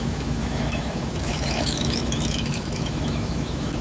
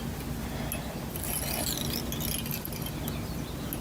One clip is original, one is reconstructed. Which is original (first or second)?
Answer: second